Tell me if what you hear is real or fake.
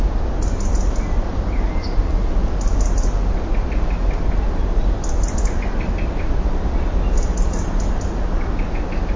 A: real